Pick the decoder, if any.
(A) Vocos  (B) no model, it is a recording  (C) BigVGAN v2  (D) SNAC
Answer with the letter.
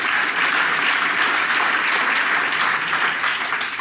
B